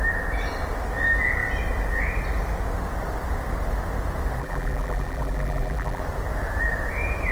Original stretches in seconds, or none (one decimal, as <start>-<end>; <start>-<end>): 0.0-4.4; 6.0-7.3